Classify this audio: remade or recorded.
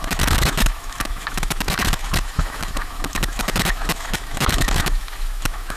remade